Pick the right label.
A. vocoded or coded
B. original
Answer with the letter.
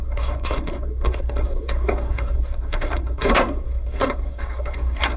A